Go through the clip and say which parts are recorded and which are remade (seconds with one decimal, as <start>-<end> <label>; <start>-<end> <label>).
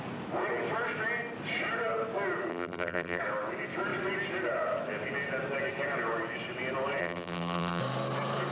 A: 0.0-2.5 recorded; 2.5-3.2 remade; 3.2-7.0 recorded; 7.0-7.8 remade; 7.8-8.5 recorded